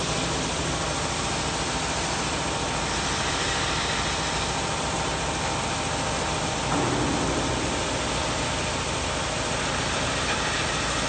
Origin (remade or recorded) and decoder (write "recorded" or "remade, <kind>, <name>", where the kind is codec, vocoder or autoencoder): recorded